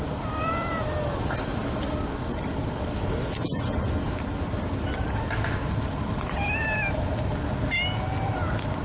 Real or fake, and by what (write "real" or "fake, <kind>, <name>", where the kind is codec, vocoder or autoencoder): real